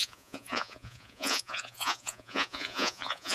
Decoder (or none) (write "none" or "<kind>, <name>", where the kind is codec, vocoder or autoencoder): vocoder, Vocos